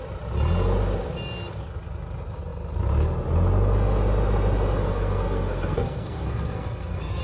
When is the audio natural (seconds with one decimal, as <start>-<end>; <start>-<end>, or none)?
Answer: 0.0-4.8